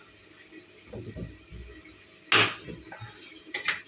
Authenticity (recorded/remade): recorded